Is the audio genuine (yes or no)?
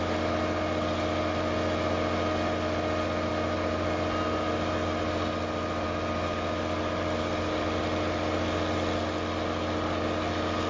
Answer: yes